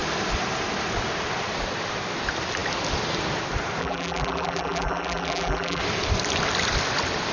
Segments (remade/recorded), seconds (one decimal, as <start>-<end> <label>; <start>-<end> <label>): 0.0-3.8 recorded; 3.8-5.8 remade; 5.8-7.3 recorded